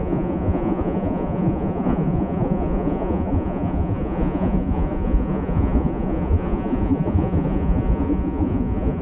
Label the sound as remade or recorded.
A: remade